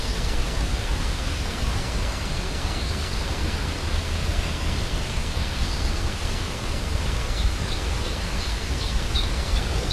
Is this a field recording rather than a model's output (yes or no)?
no